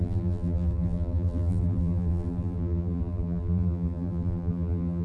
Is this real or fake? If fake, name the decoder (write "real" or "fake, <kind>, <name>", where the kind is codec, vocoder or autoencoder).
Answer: fake, vocoder, BigVGAN v2